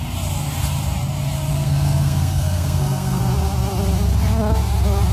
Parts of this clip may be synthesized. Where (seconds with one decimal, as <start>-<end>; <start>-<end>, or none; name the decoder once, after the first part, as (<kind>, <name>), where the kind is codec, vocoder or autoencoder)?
1.5-3.2 (codec, SNAC)